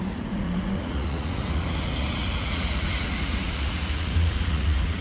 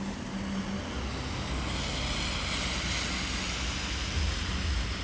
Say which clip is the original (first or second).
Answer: second